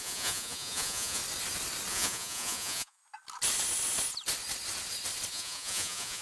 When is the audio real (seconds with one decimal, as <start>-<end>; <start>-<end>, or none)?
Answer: 1.2-1.9; 3.0-5.3